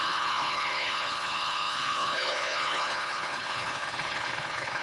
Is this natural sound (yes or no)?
no